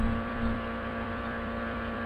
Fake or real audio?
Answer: fake